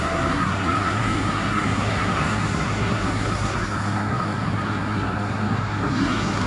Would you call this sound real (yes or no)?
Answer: no